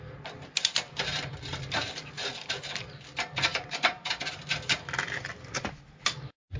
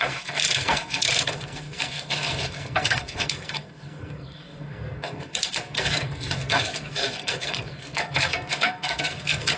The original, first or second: first